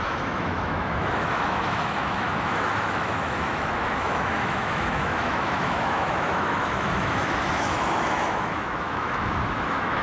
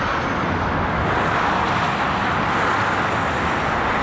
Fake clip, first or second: first